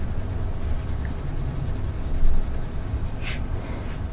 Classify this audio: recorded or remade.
recorded